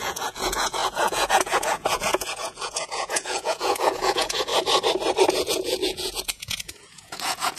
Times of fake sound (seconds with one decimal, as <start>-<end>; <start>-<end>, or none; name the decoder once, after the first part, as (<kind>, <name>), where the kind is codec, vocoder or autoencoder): 0.0-4.5 (vocoder, Vocos); 5.3-7.6